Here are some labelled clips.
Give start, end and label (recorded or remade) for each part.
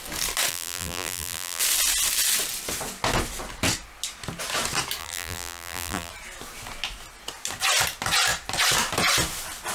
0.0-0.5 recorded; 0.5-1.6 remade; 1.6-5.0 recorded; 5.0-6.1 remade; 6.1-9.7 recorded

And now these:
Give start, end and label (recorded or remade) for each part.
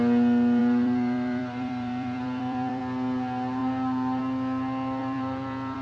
0.0-0.6 recorded; 0.6-2.8 remade; 2.8-5.0 recorded; 5.0-5.8 remade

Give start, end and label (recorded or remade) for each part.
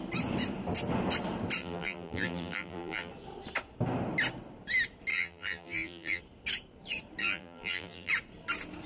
0.0-1.6 recorded; 1.6-3.1 remade; 3.1-5.1 recorded; 5.1-6.2 remade; 6.2-7.2 recorded; 7.2-8.1 remade; 8.1-8.9 recorded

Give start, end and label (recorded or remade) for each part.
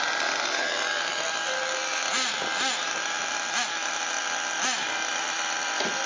0.0-6.1 recorded